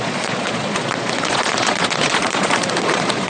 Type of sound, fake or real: fake